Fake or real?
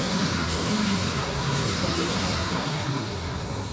fake